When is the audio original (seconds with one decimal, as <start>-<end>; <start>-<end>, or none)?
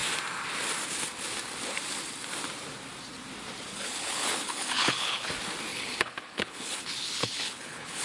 0.0-3.7; 5.3-5.7